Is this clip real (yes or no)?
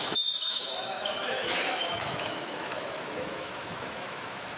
no